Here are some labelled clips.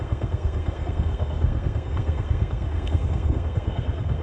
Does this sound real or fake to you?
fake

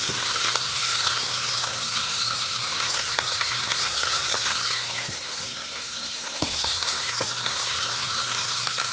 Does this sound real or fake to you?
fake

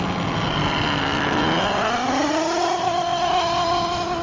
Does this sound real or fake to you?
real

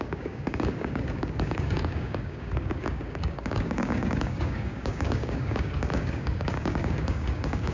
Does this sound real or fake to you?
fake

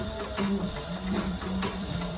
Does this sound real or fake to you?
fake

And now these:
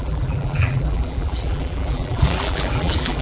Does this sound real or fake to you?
fake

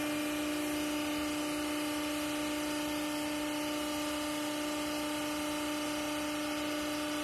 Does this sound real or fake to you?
real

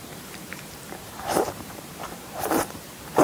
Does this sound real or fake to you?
fake